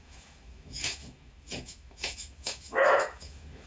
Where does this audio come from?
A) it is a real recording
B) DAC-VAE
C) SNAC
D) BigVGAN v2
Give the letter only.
B